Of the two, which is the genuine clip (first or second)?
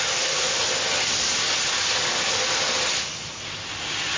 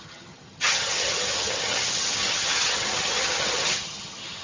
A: first